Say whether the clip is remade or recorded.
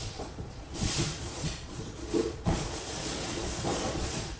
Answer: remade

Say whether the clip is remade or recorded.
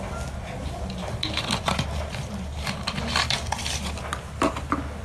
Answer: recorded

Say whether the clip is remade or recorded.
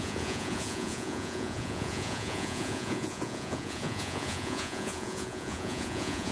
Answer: remade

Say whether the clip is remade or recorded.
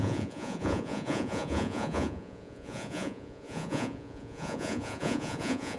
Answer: remade